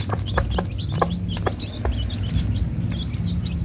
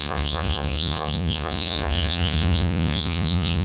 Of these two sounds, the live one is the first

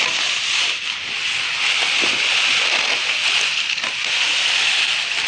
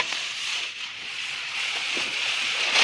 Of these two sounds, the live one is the first